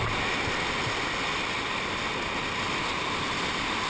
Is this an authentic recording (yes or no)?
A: yes